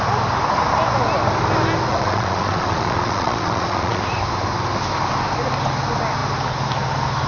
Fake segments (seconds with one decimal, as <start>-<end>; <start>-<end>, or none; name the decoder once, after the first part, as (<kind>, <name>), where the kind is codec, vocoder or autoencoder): 1.9-4.0 (vocoder, Vocos)